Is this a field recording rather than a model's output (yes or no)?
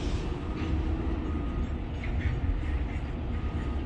yes